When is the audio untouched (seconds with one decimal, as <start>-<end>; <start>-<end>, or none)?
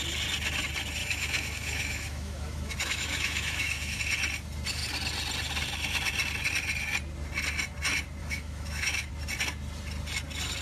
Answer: 0.0-1.0; 4.0-8.2; 9.1-10.6